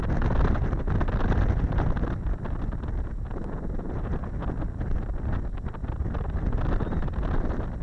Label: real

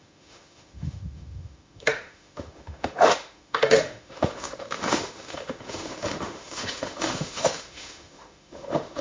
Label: fake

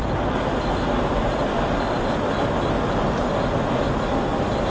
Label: real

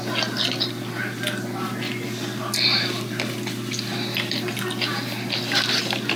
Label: real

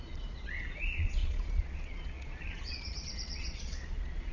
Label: fake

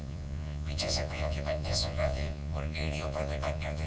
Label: fake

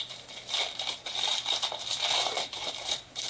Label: fake